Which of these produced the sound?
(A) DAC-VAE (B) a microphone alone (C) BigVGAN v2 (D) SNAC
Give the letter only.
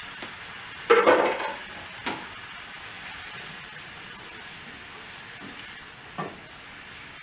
B